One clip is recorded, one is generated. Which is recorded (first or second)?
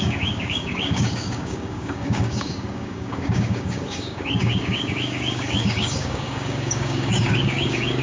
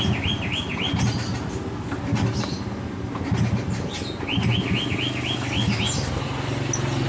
second